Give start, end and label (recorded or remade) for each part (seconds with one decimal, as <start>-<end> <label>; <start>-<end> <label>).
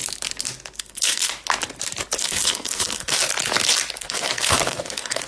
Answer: 0.0-0.8 recorded; 0.8-1.3 remade; 1.3-2.2 recorded; 2.2-3.2 remade; 3.2-4.0 recorded; 4.0-5.3 remade